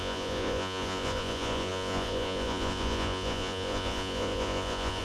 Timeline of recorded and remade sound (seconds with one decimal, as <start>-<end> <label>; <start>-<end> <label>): 0.0-5.0 remade